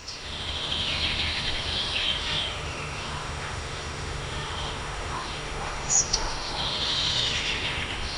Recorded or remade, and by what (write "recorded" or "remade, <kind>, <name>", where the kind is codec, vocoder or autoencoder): remade, autoencoder, DAC-VAE